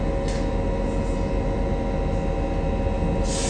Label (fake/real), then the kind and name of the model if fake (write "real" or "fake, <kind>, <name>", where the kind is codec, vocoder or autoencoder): real